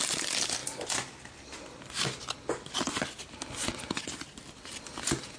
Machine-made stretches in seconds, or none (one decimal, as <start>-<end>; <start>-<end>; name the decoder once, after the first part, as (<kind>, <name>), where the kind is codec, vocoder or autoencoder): none